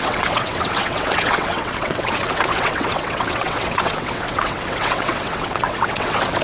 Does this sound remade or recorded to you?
remade